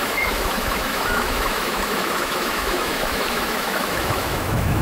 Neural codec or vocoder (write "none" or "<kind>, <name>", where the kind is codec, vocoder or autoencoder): autoencoder, DAC-VAE